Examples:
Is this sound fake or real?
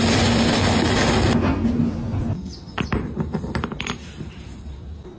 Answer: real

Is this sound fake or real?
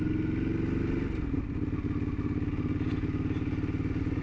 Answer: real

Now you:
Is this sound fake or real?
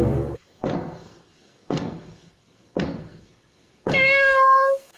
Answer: fake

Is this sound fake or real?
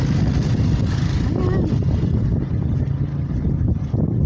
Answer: real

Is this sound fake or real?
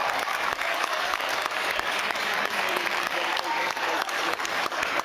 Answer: fake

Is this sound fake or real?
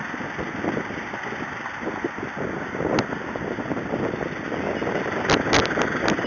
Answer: real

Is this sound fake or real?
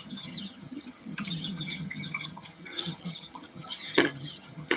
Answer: fake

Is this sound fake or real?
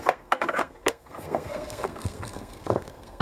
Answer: fake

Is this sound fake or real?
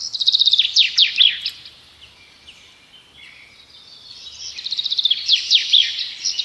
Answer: real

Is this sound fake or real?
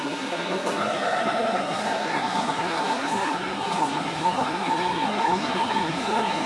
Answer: fake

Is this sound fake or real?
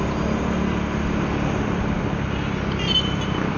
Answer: real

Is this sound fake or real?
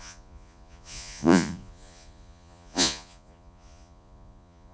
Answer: fake